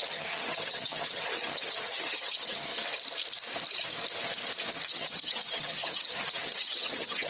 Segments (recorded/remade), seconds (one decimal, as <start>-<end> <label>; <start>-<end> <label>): 0.0-2.7 remade; 2.7-4.9 recorded; 4.9-7.3 remade